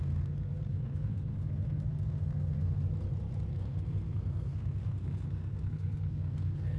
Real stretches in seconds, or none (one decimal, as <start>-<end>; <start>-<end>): 2.8-3.6